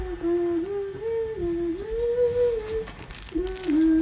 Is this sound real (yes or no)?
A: yes